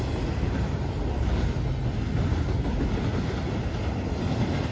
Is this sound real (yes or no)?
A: yes